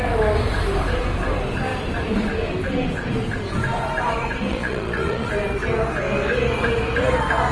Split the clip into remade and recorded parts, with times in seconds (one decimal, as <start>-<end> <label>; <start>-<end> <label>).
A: 0.0-4.5 recorded; 4.5-5.3 remade; 5.3-7.5 recorded